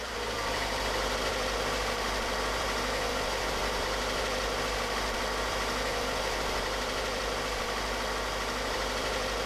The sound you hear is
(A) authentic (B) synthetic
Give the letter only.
B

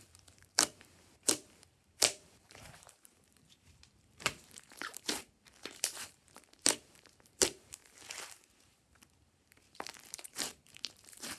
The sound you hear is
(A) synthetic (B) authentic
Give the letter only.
A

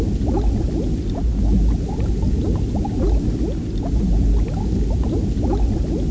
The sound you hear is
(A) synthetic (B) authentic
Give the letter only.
B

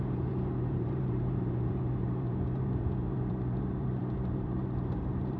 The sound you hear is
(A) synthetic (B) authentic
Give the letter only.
A